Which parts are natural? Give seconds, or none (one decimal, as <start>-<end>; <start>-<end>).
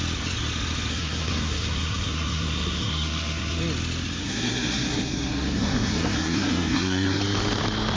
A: 0.0-0.9; 3.6-4.2; 7.2-8.0